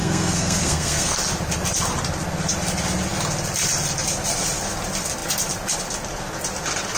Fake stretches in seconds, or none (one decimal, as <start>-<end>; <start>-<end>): 0.0-1.2